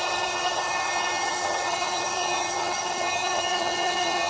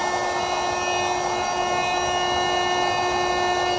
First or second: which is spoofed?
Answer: first